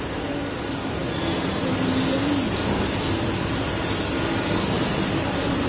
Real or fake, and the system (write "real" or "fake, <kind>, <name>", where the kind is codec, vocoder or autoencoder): real